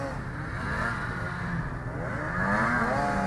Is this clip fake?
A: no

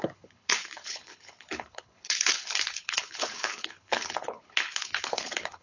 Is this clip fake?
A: yes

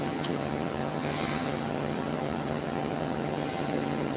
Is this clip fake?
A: yes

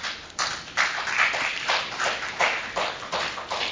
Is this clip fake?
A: no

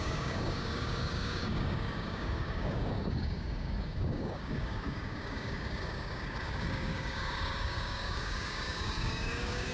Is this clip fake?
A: yes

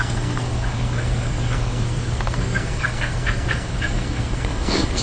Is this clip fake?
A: yes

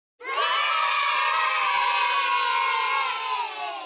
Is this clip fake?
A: no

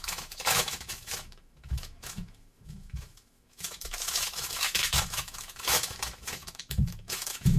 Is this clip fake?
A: yes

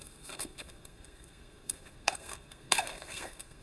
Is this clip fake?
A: yes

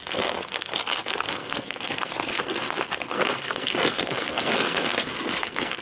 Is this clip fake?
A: yes